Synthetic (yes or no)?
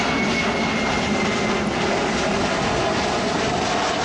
no